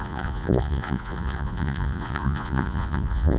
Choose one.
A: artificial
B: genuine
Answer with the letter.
A